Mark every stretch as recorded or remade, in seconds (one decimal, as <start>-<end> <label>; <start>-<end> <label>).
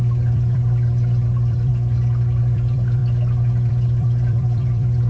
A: 0.0-1.7 remade; 1.7-2.4 recorded; 2.4-3.0 remade; 3.0-3.7 recorded; 3.7-5.1 remade